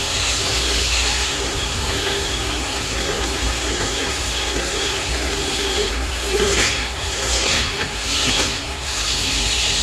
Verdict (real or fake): fake